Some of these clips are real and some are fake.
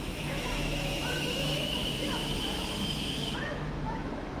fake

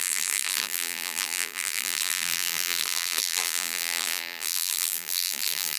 fake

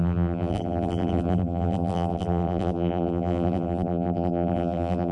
fake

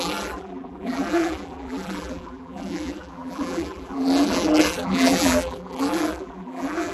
fake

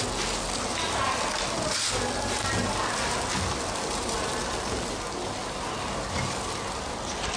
real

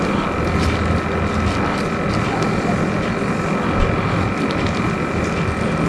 real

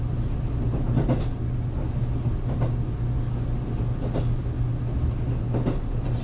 real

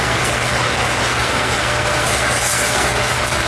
fake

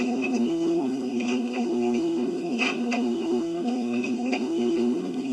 fake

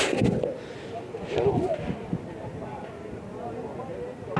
real